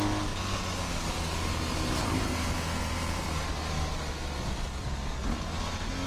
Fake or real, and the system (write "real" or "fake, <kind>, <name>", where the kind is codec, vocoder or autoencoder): real